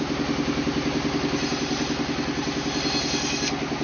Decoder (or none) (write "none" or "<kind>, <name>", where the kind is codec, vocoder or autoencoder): none